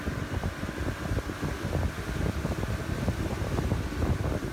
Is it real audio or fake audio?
real